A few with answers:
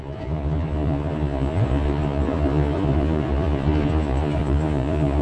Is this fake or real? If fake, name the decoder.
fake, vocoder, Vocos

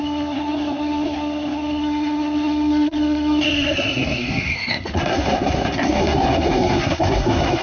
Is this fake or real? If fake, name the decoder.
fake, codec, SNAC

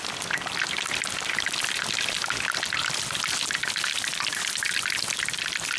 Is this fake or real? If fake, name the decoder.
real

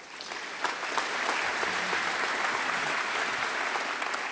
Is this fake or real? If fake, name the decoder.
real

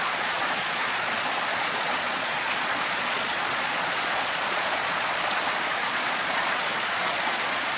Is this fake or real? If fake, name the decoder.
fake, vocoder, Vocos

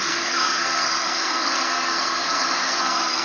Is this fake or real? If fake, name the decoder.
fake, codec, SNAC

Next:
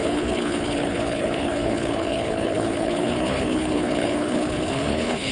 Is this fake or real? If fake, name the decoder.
fake, codec, HILCodec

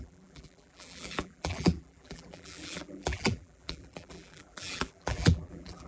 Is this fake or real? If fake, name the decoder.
fake, vocoder, BigVGAN v2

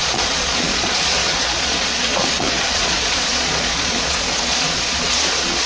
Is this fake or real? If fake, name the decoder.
fake, vocoder, Vocos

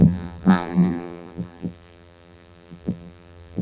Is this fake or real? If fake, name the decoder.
fake, vocoder, BigVGAN v2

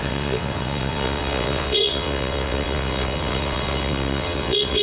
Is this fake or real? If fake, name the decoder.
fake, vocoder, WaveNeXt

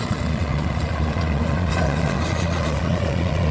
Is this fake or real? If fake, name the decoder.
fake, vocoder, Vocos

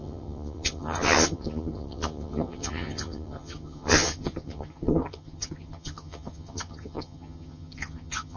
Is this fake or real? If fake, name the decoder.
fake, vocoder, HiFi-GAN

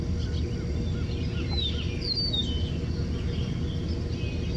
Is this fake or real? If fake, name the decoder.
real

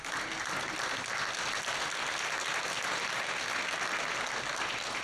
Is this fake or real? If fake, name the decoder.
real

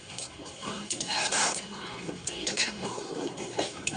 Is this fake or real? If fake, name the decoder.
fake, codec, SNAC